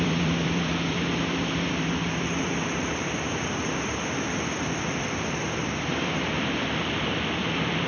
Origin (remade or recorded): remade